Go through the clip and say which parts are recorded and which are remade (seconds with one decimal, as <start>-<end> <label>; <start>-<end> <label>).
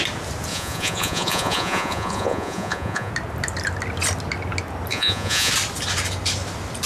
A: 0.0-0.5 recorded; 0.5-3.1 remade; 3.1-4.9 recorded; 4.9-5.5 remade; 5.5-6.9 recorded